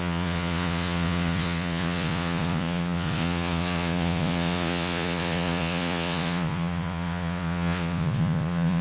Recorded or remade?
remade